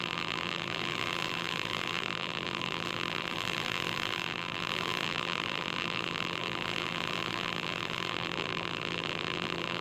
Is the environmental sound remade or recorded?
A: remade